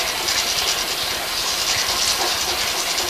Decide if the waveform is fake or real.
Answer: real